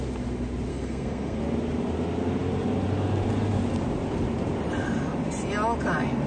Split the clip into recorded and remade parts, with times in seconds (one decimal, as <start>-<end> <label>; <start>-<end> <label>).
0.0-0.7 recorded; 0.7-1.4 remade; 1.4-6.3 recorded